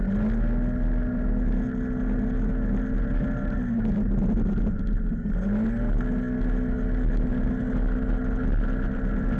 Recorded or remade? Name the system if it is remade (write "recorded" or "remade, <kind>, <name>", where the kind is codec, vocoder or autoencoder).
recorded